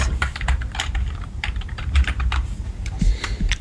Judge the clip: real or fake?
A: fake